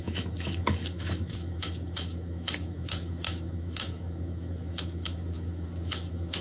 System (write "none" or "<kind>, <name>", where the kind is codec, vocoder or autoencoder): autoencoder, DAC-VAE